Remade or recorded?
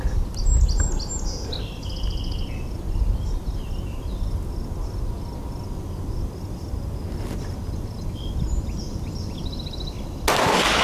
recorded